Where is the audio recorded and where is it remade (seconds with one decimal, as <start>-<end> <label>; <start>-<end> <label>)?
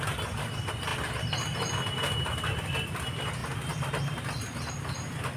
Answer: 0.0-5.4 recorded